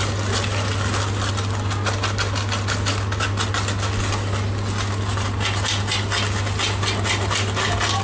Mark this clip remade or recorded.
recorded